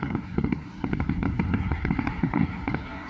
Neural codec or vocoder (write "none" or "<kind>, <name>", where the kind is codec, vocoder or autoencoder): codec, SNAC